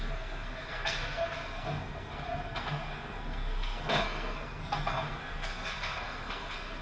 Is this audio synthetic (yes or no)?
yes